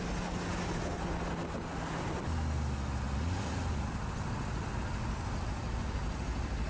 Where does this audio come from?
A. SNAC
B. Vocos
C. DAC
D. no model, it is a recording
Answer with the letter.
D